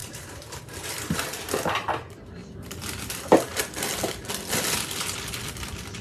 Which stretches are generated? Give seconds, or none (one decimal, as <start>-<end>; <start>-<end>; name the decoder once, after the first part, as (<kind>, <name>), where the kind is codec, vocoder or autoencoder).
0.0-0.6 (vocoder, BigVGAN v2); 2.4-3.0